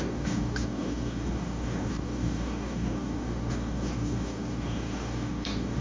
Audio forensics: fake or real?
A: fake